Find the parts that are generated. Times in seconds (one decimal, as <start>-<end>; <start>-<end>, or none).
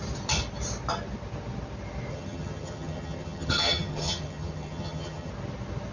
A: 2.1-5.3